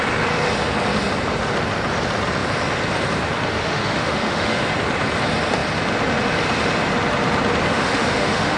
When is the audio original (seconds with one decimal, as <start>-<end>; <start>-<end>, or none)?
0.0-3.5; 4.6-7.7